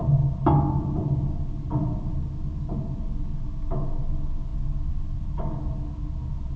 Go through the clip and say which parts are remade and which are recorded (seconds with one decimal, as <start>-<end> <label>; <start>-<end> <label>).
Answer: 0.0-6.6 recorded